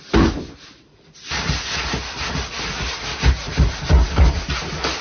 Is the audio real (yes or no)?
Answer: yes